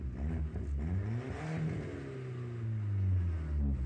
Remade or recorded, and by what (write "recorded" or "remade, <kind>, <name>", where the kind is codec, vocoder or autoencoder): recorded